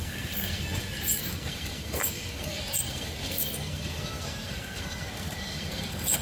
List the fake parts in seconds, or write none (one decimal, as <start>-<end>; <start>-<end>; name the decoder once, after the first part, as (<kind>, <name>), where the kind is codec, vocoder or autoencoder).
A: 0.0-6.2 (codec, SNAC)